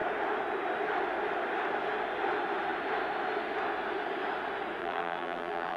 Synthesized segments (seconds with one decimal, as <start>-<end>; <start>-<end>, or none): 4.8-5.8